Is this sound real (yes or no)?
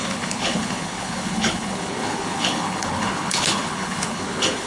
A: no